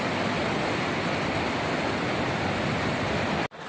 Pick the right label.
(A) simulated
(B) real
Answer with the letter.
B